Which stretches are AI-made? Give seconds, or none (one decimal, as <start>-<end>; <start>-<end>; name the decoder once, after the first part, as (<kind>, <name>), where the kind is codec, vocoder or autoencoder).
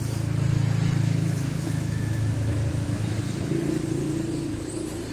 1.2-3.5 (autoencoder, DAC-VAE)